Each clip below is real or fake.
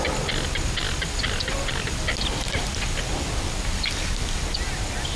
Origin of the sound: real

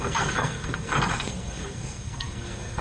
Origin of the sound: fake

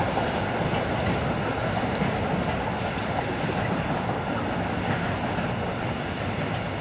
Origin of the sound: real